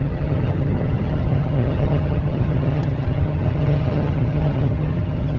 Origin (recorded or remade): remade